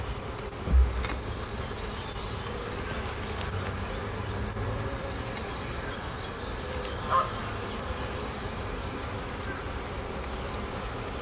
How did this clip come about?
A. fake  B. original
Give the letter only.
B